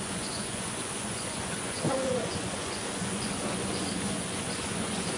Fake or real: fake